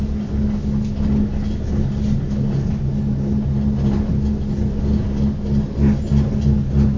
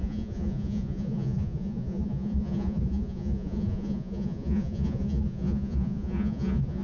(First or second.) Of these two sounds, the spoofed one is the second